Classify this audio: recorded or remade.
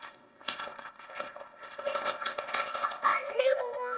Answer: remade